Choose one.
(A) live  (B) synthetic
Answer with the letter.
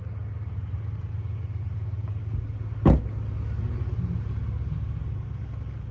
A